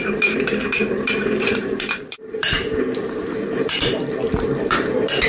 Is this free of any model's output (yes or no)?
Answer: no